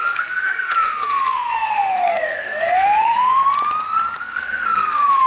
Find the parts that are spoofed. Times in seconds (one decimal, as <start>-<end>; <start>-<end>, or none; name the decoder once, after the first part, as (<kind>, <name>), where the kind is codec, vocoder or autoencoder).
0.0-3.4 (codec, SNAC); 4.2-5.3